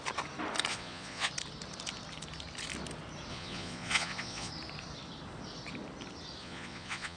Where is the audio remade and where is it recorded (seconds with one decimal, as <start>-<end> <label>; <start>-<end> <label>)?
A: 0.0-0.7 recorded; 0.7-1.3 remade; 1.3-3.3 recorded; 3.3-4.5 remade; 4.5-6.4 recorded; 6.4-7.2 remade